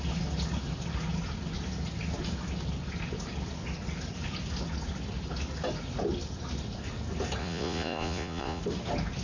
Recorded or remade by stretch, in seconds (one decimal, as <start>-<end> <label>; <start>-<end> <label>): 0.0-7.4 recorded; 7.4-8.6 remade; 8.6-9.2 recorded